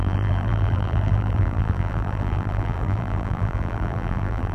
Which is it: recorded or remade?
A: remade